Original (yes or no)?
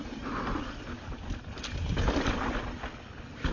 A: yes